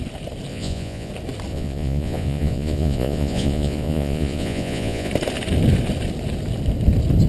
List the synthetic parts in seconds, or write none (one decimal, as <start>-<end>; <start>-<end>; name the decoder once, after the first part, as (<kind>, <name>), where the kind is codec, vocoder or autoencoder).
0.5-1.1 (vocoder, Vocos); 1.5-5.1